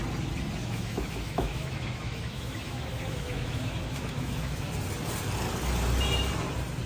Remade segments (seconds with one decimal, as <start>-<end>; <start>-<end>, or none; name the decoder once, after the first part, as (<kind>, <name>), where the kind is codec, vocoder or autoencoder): 0.6-4.7 (autoencoder, DAC-VAE)